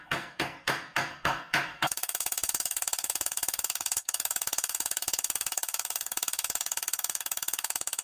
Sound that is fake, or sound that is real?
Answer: fake